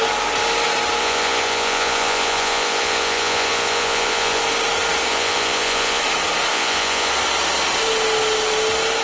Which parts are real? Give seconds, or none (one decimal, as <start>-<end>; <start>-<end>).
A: 0.0-1.0; 4.4-5.1; 6.0-6.5; 7.1-9.0